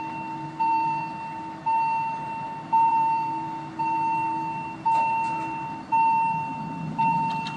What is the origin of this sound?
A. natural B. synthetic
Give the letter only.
B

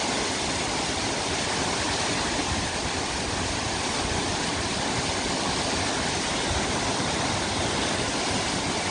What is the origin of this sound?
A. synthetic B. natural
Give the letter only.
B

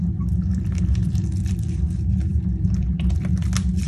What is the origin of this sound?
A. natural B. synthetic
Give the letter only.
B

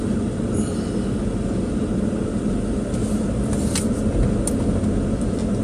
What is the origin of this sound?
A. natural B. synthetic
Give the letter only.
A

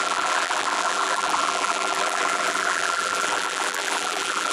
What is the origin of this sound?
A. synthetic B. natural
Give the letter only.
A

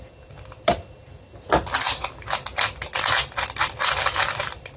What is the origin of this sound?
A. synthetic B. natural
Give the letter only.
B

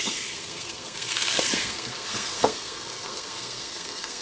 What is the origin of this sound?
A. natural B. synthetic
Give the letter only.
B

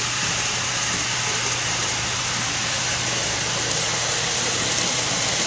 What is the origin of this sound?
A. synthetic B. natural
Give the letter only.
A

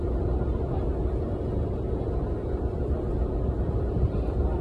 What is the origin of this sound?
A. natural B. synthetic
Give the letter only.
A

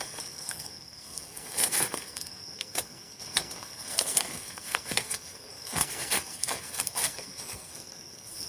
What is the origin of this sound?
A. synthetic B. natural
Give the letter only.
A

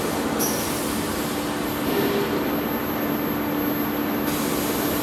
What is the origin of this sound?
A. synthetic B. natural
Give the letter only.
B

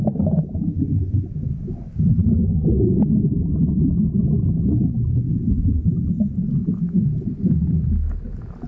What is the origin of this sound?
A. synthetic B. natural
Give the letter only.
B